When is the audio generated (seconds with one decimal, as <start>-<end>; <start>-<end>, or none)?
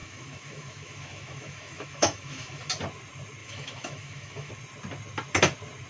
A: 0.0-2.7; 3.4-4.5